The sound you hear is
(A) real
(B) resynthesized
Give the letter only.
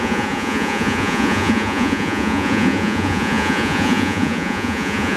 B